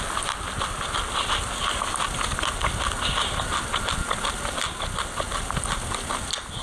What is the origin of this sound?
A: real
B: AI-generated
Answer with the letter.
A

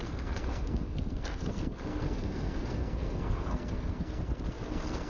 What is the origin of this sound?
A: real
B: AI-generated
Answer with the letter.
B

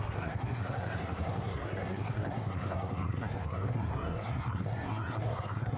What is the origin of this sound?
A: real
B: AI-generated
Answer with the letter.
B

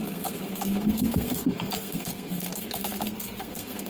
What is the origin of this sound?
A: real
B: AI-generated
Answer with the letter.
B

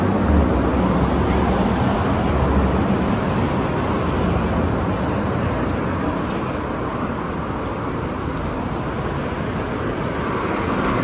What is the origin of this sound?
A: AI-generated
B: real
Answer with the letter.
B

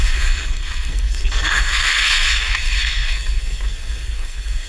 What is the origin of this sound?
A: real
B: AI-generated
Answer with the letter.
B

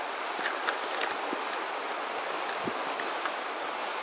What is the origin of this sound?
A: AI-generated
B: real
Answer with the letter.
B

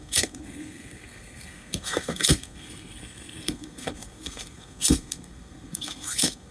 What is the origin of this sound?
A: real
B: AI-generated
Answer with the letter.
B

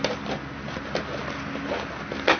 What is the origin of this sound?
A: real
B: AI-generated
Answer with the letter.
A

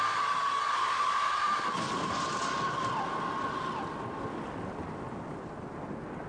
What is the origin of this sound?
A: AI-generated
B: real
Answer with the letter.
B